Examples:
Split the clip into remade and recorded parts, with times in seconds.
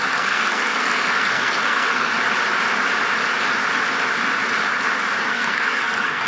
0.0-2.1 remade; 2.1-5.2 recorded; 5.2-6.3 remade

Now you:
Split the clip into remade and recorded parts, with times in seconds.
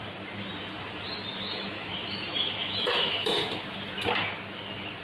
0.0-1.3 recorded; 1.3-1.9 remade; 1.9-2.3 recorded; 2.3-3.3 remade; 3.3-5.0 recorded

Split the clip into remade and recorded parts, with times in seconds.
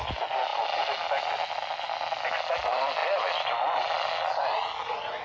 0.0-5.2 recorded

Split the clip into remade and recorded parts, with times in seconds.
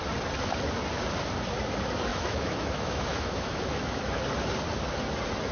0.0-2.1 recorded; 2.1-4.2 remade; 4.2-5.5 recorded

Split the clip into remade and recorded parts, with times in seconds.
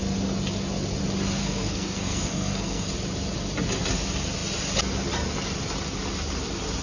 0.0-1.4 recorded; 1.4-2.9 remade; 2.9-6.8 recorded